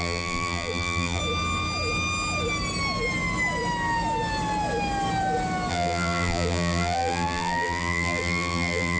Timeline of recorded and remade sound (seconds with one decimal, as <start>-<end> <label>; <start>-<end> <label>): 0.0-1.2 remade; 1.2-5.7 recorded; 5.7-9.0 remade